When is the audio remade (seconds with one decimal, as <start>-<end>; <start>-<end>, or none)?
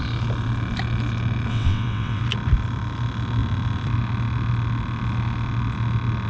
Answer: 1.5-2.2